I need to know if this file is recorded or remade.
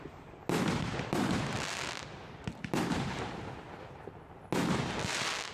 recorded